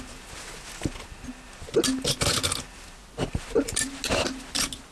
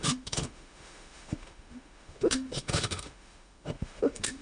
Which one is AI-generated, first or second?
second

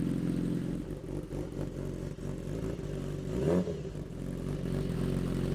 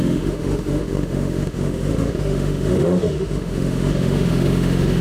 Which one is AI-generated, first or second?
second